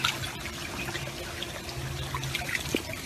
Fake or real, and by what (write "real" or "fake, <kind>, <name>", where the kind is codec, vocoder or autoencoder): real